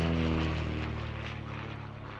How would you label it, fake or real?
real